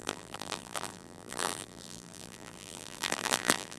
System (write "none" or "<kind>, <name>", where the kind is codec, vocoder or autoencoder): vocoder, BigVGAN v2